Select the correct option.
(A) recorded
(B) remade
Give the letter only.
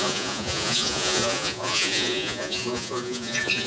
B